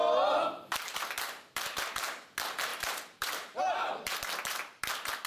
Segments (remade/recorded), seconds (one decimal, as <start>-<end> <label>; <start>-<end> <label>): 0.0-2.7 recorded; 2.7-4.1 remade; 4.1-5.3 recorded